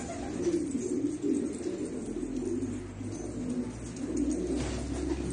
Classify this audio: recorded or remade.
recorded